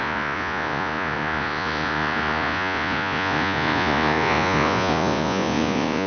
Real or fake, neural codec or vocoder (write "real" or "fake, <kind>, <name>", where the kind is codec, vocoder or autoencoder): fake, vocoder, Vocos